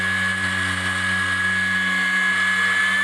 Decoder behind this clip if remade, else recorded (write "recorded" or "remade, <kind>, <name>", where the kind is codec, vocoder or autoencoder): recorded